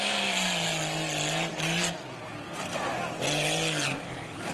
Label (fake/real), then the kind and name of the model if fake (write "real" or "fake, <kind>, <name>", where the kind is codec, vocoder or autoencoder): real